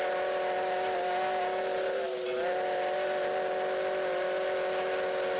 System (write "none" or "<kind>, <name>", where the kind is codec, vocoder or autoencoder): none